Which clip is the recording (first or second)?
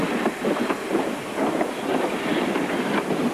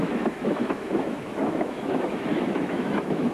first